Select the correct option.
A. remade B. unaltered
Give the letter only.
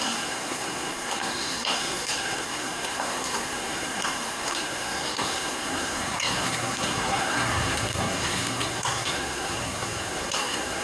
A